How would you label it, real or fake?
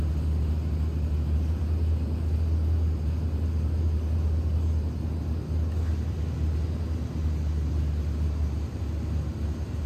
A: real